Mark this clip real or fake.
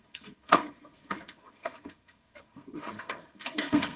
fake